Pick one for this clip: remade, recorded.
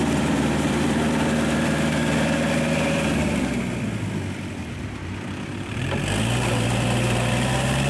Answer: remade